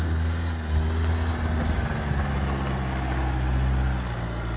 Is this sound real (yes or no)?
yes